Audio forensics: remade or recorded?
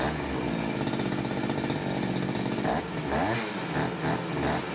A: recorded